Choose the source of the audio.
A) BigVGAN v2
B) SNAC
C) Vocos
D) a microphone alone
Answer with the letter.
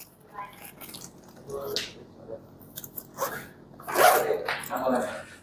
D